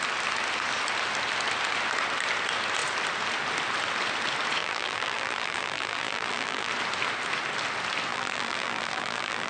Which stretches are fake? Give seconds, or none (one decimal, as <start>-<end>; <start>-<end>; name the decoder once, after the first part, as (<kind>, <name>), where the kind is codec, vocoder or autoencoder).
4.6-6.7 (vocoder, BigVGAN v2); 8.1-9.5